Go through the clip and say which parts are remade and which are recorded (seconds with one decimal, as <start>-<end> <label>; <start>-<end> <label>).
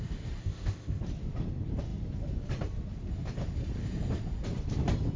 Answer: 0.0-0.4 recorded; 0.4-1.0 remade; 1.0-5.2 recorded